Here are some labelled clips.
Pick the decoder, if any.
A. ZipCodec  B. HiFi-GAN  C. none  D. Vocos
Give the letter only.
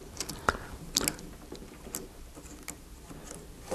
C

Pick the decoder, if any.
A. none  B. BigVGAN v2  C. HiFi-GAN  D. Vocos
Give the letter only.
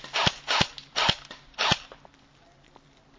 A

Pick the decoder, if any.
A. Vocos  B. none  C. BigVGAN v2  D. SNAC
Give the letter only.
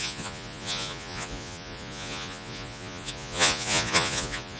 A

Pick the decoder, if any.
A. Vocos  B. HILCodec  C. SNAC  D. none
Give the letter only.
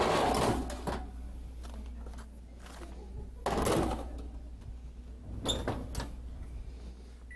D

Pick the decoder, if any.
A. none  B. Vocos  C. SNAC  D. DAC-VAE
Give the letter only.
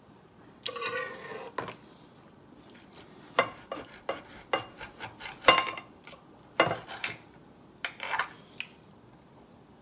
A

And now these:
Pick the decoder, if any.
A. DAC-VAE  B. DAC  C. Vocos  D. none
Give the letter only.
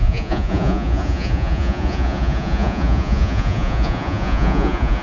C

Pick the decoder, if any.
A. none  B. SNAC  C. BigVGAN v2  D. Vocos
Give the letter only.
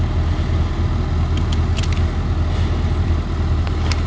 A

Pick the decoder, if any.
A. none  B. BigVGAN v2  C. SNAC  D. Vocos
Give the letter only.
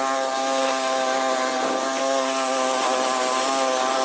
A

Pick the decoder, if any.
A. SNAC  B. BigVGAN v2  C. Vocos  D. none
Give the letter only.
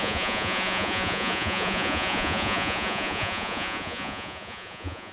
C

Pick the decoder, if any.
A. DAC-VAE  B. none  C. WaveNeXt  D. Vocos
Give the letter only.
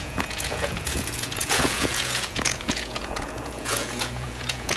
D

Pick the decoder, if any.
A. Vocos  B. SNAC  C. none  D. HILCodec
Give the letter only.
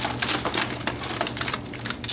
C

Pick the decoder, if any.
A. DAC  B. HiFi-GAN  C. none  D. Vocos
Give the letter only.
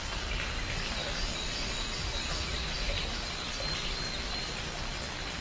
C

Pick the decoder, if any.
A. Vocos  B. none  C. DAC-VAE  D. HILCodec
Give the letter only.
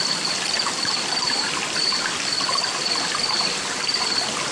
B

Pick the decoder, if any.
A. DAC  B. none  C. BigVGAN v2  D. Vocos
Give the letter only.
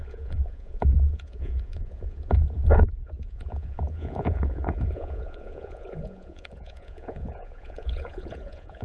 D